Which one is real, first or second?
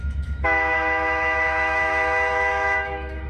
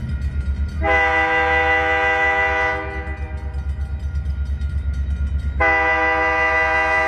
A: second